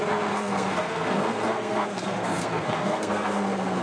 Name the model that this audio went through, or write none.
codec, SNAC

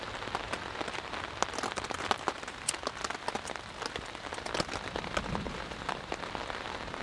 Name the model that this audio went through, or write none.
none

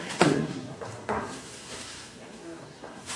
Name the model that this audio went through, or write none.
codec, SNAC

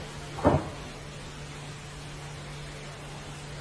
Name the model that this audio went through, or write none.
none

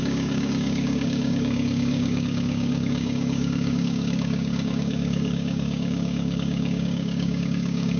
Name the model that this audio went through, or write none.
codec, DAC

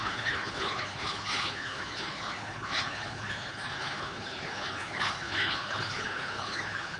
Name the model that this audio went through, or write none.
codec, HILCodec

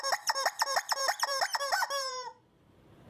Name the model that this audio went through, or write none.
vocoder, BigVGAN v2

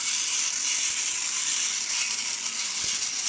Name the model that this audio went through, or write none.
none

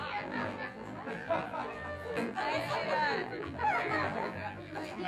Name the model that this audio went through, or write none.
vocoder, BigVGAN v2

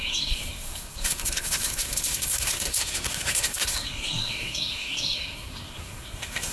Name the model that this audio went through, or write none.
codec, SNAC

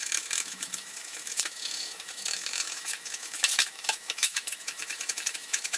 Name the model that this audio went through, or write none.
autoencoder, DAC-VAE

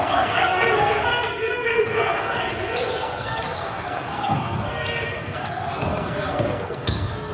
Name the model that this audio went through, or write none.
codec, SNAC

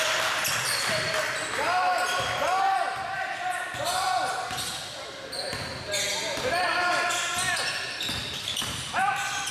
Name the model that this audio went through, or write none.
none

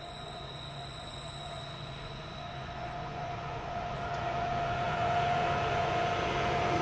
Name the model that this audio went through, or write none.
vocoder, Vocos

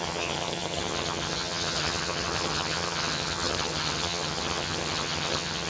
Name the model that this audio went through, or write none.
vocoder, HiFi-GAN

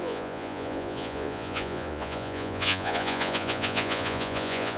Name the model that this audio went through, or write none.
vocoder, Vocos